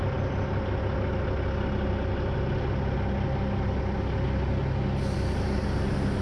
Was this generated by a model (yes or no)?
no